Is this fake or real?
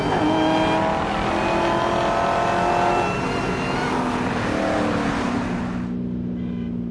real